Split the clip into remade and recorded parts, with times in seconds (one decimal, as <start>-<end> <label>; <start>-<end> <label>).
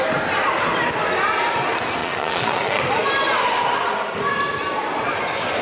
0.0-2.0 recorded; 2.0-2.8 remade; 2.8-5.6 recorded